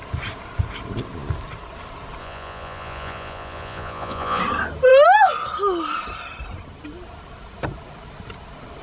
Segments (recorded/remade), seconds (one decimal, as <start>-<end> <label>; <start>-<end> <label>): 0.0-2.2 recorded; 2.2-4.4 remade; 4.4-8.8 recorded